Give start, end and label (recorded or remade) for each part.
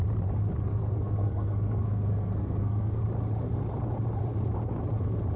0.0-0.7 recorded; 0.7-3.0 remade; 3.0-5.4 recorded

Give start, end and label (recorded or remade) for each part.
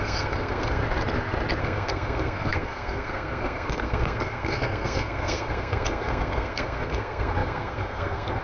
0.0-0.8 remade; 0.8-1.6 recorded; 1.6-8.4 remade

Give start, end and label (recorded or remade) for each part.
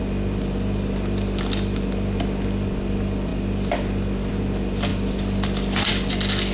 0.0-6.5 recorded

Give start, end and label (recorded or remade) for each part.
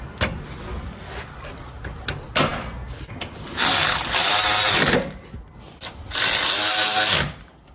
0.0-7.7 recorded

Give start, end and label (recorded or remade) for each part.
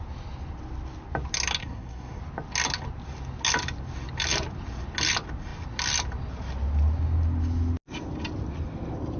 0.0-1.6 recorded; 1.6-2.2 remade; 2.2-9.2 recorded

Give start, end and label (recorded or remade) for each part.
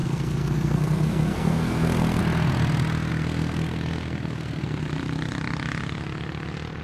0.0-2.2 remade; 2.2-3.1 recorded; 3.1-4.8 remade; 4.8-6.8 recorded